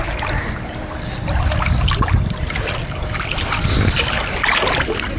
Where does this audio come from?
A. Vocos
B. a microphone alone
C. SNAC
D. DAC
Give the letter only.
B